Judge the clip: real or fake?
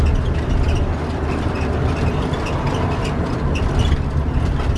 real